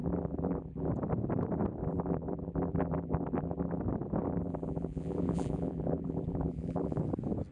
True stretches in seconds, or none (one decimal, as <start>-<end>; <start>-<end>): 0.9-1.8; 3.8-4.2; 7.0-7.5